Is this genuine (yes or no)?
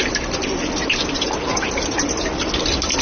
yes